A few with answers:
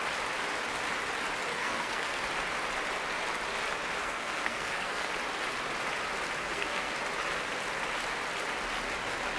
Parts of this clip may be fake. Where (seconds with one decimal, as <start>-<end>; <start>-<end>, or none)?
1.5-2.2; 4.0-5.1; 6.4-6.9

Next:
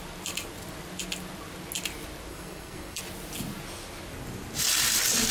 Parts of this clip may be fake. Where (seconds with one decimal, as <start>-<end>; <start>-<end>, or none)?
2.3-3.0

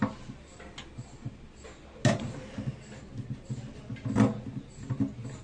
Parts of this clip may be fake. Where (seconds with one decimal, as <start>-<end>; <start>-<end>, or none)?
none